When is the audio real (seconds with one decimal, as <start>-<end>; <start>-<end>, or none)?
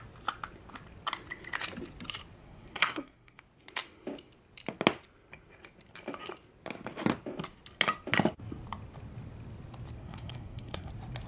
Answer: 0.0-2.4; 3.4-10.0; 10.9-11.3